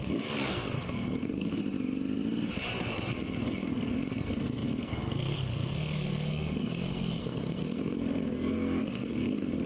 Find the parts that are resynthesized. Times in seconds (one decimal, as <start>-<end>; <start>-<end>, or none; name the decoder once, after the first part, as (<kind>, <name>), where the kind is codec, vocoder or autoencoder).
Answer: 0.0-1.6 (codec, SNAC); 3.1-9.7